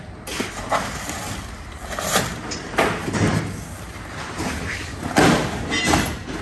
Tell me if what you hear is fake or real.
real